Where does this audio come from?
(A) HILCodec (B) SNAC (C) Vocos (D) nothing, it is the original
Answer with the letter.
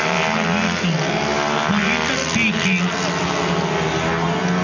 D